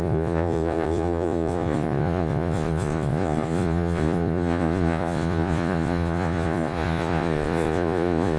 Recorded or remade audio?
remade